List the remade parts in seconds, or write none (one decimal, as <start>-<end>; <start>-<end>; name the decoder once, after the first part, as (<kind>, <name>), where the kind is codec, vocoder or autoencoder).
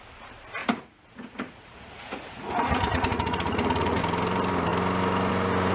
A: 0.6-4.0 (vocoder, Vocos)